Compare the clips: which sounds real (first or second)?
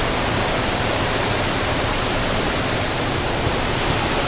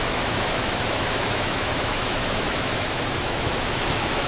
first